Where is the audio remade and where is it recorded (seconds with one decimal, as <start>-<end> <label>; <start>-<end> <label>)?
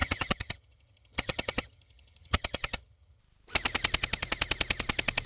0.0-3.2 remade; 3.2-5.3 recorded